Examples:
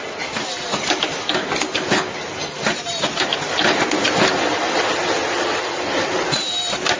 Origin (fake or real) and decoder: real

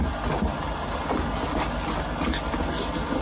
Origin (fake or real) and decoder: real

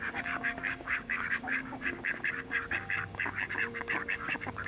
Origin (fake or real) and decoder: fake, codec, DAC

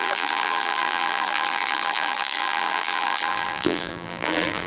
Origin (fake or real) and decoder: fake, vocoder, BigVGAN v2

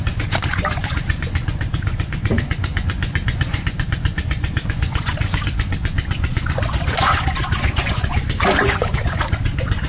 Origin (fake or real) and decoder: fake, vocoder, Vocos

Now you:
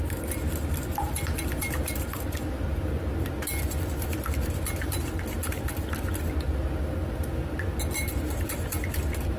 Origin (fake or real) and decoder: real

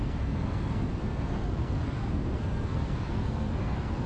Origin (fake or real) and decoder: fake, codec, SNAC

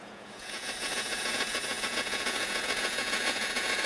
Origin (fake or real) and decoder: fake, vocoder, Vocos